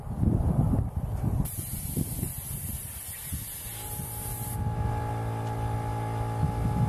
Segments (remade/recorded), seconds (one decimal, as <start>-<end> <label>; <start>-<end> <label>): 0.0-6.9 recorded